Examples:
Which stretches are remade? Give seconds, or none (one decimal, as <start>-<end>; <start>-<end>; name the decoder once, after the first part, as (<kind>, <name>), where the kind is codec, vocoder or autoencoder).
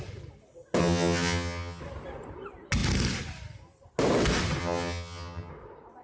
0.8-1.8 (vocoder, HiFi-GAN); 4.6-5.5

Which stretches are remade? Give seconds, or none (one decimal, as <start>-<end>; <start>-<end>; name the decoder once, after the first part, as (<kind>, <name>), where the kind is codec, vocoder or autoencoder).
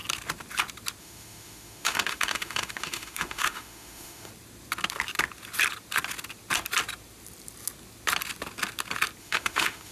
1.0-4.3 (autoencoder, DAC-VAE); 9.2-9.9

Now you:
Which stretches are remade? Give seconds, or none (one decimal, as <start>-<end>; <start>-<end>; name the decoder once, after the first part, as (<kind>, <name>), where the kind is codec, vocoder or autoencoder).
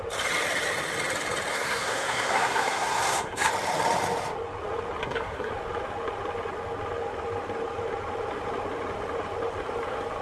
1.5-3.5 (codec, SNAC); 5.0-5.5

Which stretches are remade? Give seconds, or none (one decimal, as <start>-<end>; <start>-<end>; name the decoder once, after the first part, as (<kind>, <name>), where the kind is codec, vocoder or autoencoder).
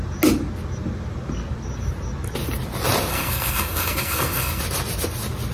3.1-4.6 (codec, SNAC)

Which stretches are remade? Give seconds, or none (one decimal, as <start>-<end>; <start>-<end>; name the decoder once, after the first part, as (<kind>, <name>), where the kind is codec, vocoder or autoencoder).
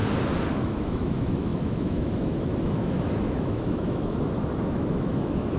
0.6-5.6 (autoencoder, DAC-VAE)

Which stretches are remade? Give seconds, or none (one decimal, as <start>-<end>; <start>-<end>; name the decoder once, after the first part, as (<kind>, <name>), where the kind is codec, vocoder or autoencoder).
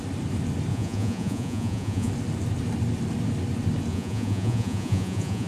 0.7-2.1 (vocoder, Vocos); 3.9-5.5